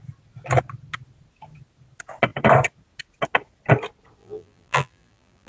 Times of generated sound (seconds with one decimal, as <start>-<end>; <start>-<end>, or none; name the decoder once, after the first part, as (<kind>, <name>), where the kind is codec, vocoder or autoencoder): 4.2-5.5 (vocoder, BigVGAN v2)